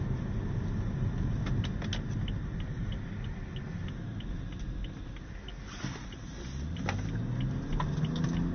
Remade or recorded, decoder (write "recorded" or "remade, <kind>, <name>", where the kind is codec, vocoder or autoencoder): recorded